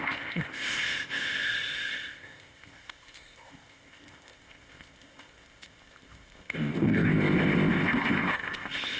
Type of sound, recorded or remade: remade